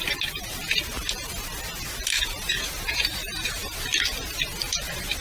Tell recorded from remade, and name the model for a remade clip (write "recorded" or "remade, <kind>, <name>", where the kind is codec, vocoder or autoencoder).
recorded